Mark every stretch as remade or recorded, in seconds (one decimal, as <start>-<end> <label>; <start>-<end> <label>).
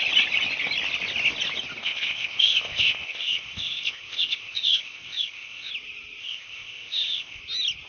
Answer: 0.0-1.8 recorded; 1.8-5.7 remade; 5.7-6.2 recorded; 6.2-7.4 remade; 7.4-7.9 recorded